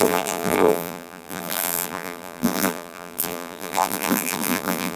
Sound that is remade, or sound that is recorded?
remade